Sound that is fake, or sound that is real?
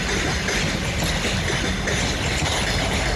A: real